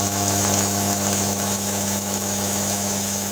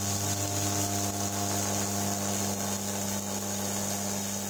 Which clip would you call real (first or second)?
second